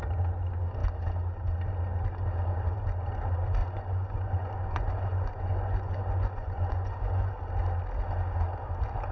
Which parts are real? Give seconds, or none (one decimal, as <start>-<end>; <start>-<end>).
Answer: 0.0-3.6; 7.3-9.1